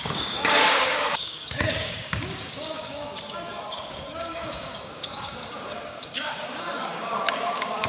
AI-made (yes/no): yes